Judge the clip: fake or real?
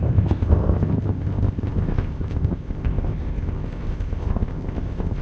fake